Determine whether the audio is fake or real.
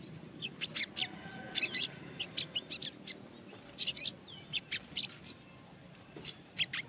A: real